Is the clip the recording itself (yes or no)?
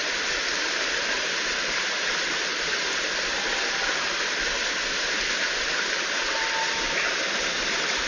yes